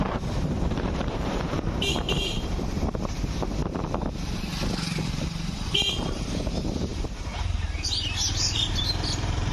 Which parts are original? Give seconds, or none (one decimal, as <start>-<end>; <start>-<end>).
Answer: 3.6-5.7